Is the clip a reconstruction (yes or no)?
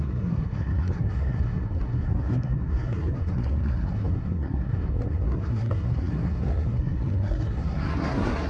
yes